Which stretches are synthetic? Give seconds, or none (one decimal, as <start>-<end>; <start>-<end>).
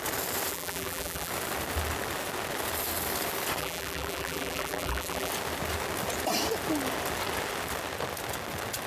0.5-1.3; 3.6-5.3